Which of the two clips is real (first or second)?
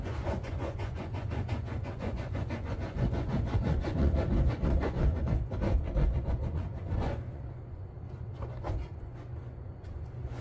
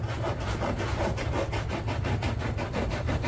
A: second